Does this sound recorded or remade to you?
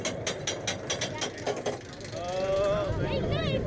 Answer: recorded